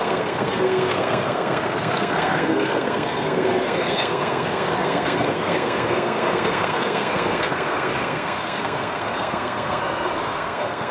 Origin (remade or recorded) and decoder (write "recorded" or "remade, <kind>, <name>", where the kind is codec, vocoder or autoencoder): remade, codec, SNAC